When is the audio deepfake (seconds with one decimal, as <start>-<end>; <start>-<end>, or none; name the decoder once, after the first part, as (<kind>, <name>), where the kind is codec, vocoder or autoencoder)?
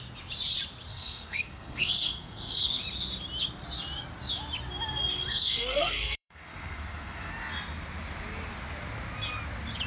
0.9-2.8 (codec, SNAC); 5.3-7.3